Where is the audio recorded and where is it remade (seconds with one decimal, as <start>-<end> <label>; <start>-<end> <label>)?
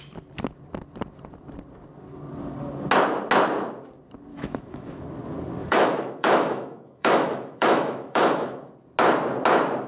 0.0-4.3 recorded; 4.3-5.0 remade; 5.0-5.6 recorded; 5.6-8.7 remade; 8.7-9.9 recorded